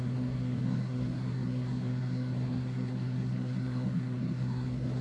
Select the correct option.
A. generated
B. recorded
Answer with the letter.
A